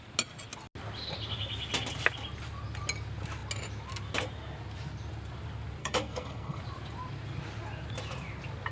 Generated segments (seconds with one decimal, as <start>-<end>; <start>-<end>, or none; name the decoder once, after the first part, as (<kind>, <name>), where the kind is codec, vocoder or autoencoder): 5.8-6.6 (codec, SNAC)